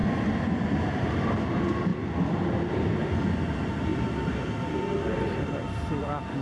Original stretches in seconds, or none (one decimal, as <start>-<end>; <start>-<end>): 0.0-6.4